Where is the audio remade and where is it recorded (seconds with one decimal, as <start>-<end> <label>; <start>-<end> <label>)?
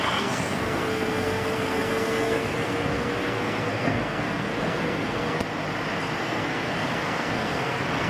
0.0-5.4 remade; 5.4-6.2 recorded; 6.2-8.1 remade